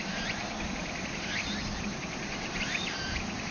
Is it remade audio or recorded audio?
remade